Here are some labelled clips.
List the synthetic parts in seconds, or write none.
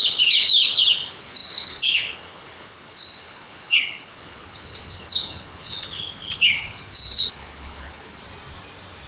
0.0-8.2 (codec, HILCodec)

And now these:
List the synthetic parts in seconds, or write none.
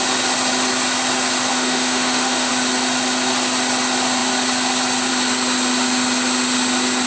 1.5-2.5 (autoencoder, DAC-VAE)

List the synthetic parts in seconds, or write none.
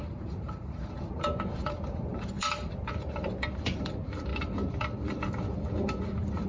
0.0-3.9 (vocoder, BigVGAN v2); 4.3-5.3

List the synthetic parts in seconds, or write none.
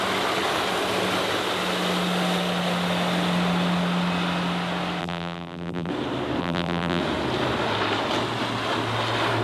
5.0-5.9 (vocoder, BigVGAN v2); 6.4-7.0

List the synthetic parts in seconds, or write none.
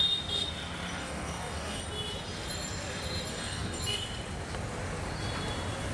1.0-1.8 (codec, DAC); 3.3-3.8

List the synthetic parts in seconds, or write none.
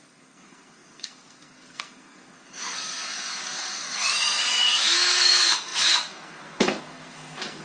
0.0-7.6 (codec, SNAC)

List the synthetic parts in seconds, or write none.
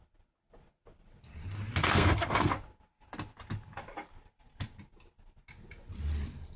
1.8-2.5 (codec, SNAC)